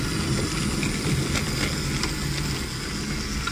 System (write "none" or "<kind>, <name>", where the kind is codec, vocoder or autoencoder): none